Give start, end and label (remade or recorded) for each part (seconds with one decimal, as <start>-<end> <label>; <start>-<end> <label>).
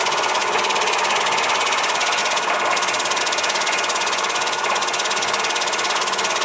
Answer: 0.0-2.2 remade; 2.2-3.2 recorded; 3.2-6.4 remade